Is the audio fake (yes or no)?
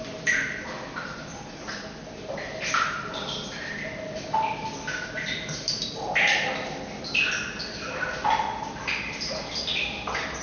no